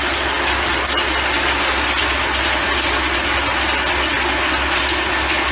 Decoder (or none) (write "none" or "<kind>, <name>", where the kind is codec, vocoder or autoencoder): none